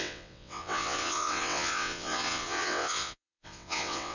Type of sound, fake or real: fake